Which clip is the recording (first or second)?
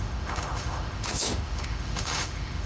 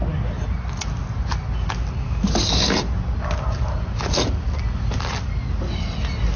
second